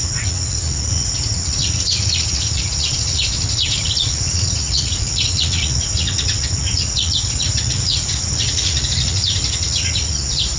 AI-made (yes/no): yes